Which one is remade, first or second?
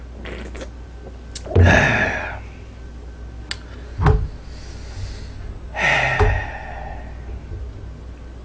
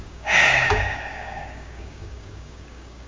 second